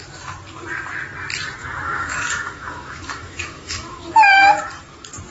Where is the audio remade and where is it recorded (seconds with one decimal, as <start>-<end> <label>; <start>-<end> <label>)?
0.0-1.6 recorded; 1.6-4.2 remade; 4.2-5.3 recorded